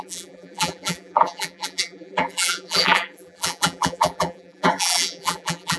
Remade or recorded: remade